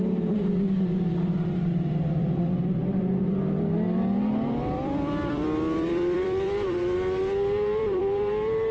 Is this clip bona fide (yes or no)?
no